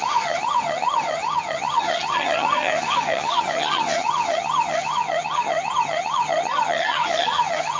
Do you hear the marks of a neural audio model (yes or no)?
yes